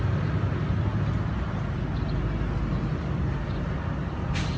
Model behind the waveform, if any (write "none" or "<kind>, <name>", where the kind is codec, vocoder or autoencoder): none